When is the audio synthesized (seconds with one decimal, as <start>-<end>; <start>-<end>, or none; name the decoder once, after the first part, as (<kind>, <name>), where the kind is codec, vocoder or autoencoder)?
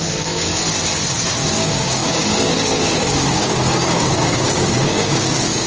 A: 0.0-0.5 (codec, DAC); 1.4-5.7